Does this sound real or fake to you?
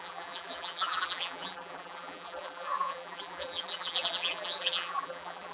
fake